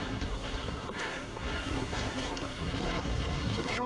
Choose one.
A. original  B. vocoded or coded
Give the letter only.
B